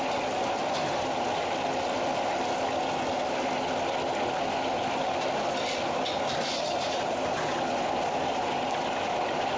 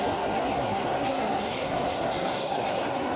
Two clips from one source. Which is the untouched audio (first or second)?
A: first